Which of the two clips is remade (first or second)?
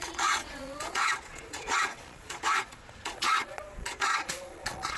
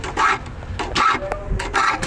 first